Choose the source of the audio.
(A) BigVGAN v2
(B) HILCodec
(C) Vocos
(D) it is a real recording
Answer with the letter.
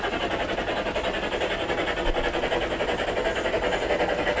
D